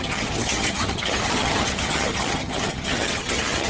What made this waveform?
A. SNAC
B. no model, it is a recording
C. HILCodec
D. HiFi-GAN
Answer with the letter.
D